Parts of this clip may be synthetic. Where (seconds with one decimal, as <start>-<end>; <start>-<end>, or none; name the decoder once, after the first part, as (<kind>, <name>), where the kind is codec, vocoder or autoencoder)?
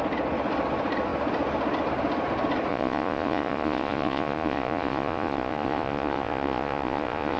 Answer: 2.7-7.4 (vocoder, Vocos)